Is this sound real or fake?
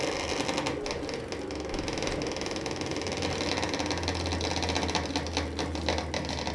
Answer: real